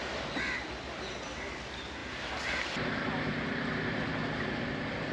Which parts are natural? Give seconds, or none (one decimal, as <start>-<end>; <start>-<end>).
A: 0.0-5.1